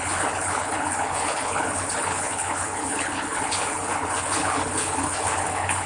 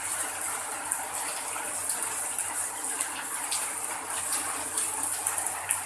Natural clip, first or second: second